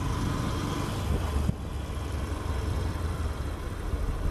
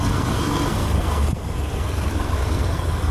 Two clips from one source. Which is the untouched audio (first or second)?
first